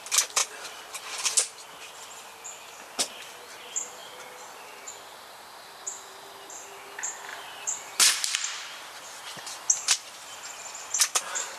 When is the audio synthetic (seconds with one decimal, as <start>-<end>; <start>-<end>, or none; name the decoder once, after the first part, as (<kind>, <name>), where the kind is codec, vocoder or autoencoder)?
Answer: 7.3-11.0 (vocoder, BigVGAN v2)